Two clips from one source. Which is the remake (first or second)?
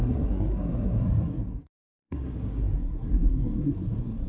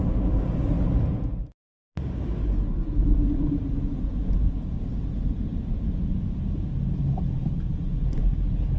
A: first